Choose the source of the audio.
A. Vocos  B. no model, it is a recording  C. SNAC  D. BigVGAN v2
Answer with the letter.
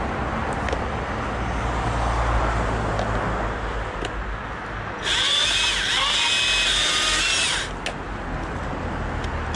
B